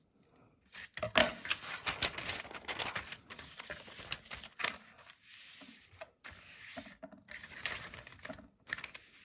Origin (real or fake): real